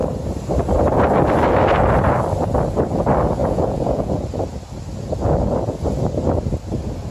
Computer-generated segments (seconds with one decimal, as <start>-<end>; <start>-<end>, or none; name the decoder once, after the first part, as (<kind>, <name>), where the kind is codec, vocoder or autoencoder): 3.4-4.1 (vocoder, Vocos)